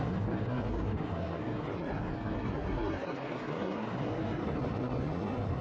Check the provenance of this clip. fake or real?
fake